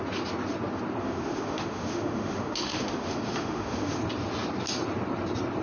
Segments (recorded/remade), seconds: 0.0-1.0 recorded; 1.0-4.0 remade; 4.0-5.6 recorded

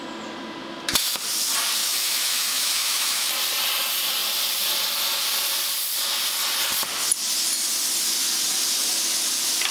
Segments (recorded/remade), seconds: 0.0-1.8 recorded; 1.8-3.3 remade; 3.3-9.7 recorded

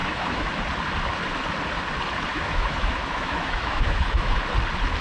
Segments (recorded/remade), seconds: 0.0-0.5 remade; 0.5-2.3 recorded; 2.3-4.4 remade; 4.4-5.0 recorded

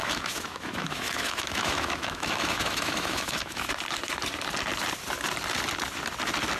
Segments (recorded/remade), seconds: 0.0-3.7 remade; 3.7-6.6 recorded